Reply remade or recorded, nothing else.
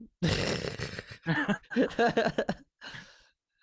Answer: recorded